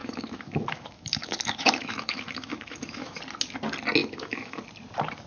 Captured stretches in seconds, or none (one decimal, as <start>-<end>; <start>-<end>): 3.2-4.0; 4.6-5.3